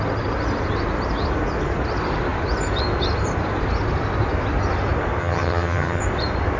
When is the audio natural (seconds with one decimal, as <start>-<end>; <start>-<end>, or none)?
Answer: 0.0-5.2; 6.0-6.6